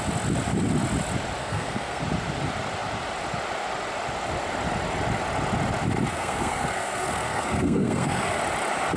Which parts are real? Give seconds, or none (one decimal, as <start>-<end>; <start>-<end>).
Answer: 0.0-1.4; 2.0-6.1; 8.4-9.0